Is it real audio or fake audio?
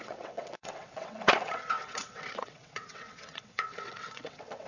fake